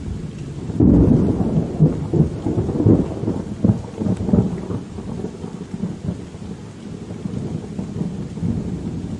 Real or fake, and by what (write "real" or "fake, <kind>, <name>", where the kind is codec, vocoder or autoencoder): real